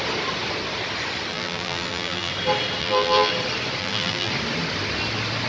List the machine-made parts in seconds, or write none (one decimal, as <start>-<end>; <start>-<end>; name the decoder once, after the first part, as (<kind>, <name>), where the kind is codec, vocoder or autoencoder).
1.3-2.3 (vocoder, BigVGAN v2); 2.8-3.3; 3.8-4.3